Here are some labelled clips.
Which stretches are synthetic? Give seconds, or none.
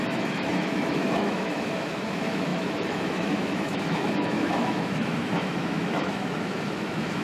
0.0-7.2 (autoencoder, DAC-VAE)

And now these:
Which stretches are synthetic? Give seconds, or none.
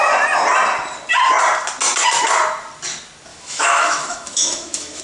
3.3-5.0 (autoencoder, DAC-VAE)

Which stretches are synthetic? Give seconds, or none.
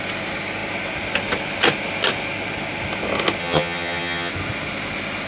3.4-4.3 (vocoder, HiFi-GAN)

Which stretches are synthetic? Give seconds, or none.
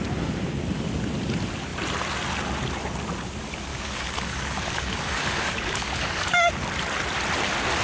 3.7-6.5 (codec, DAC)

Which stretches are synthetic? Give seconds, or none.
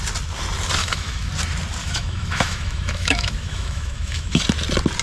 0.8-1.3 (autoencoder, DAC-VAE); 1.8-4.4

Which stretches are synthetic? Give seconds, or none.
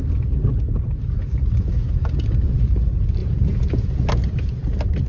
1.7-2.5 (vocoder, Vocos); 3.2-3.9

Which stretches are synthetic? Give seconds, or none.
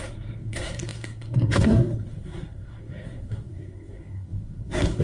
0.0-5.0 (codec, SNAC)